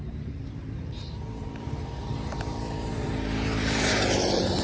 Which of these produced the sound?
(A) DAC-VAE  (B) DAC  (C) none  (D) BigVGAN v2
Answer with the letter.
D